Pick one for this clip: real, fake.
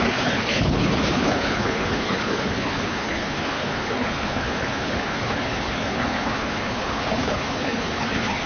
fake